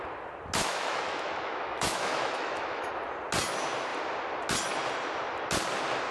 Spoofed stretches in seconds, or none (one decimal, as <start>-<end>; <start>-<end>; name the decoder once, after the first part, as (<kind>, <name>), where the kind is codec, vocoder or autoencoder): 0.6-2.9 (autoencoder, DAC-VAE)